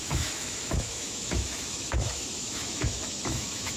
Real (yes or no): no